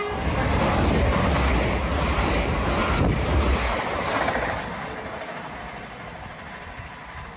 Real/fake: real